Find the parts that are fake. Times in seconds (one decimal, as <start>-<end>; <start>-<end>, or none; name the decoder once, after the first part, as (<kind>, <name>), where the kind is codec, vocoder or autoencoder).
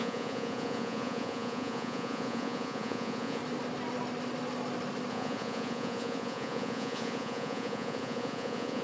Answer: 0.0-3.4 (vocoder, Vocos); 5.1-8.8